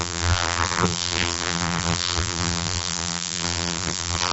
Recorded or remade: remade